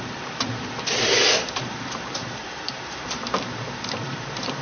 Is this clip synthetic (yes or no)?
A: yes